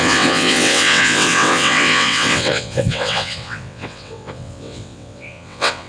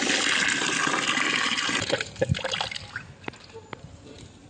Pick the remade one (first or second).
first